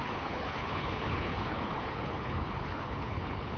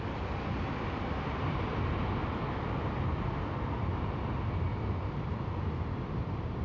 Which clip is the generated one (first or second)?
first